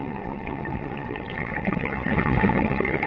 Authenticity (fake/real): fake